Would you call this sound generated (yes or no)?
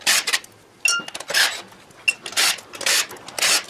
no